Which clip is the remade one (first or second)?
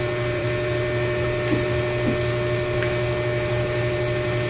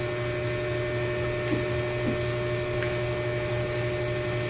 first